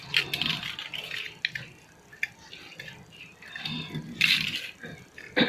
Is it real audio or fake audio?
real